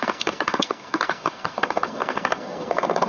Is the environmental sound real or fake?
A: fake